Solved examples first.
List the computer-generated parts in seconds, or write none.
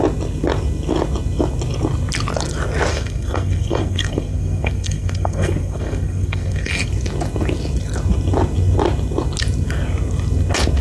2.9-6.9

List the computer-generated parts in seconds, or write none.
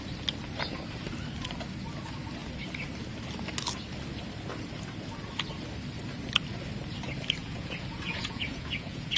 7.4-9.2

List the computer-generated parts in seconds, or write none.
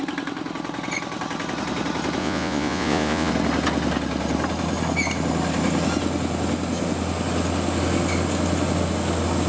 2.2-3.3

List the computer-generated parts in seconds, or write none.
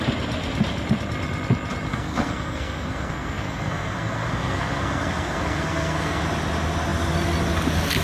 1.9-6.2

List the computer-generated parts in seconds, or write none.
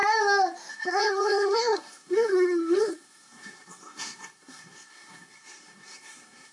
0.7-6.5